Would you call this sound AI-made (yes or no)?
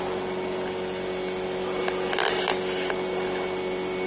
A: no